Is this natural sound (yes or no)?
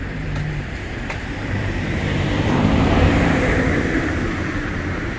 no